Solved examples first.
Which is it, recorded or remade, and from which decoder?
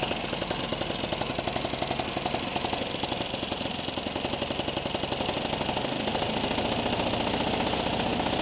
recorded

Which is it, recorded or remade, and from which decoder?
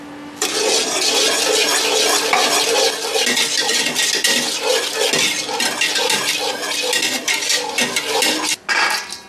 recorded